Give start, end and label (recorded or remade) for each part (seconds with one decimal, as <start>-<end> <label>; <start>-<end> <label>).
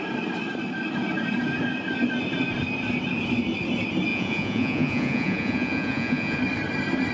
0.0-4.1 recorded; 4.1-6.4 remade; 6.4-7.1 recorded